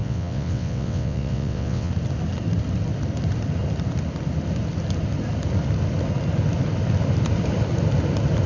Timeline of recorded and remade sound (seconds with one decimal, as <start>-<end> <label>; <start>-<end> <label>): 0.0-1.9 remade; 1.9-8.5 recorded